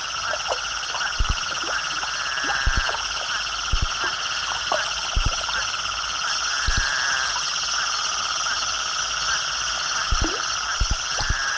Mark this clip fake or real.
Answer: fake